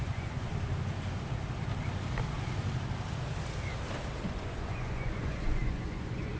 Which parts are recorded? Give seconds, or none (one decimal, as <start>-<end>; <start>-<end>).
0.5-4.3